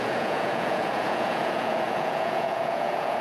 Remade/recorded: remade